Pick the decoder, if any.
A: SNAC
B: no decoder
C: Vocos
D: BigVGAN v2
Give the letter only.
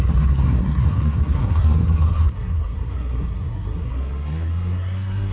A